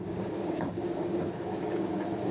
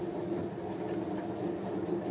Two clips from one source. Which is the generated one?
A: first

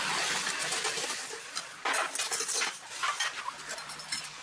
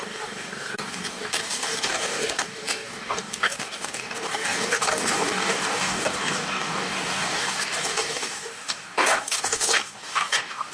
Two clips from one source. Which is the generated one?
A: second